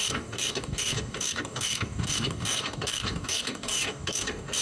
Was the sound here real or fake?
fake